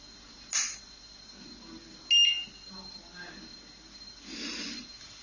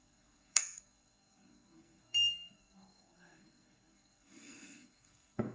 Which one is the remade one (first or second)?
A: second